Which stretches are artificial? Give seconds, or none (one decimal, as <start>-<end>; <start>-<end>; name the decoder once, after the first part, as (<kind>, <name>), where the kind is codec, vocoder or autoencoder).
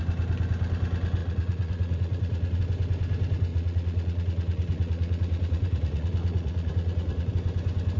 1.2-2.6 (vocoder, Vocos); 3.5-7.3